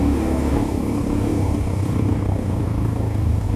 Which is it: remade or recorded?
remade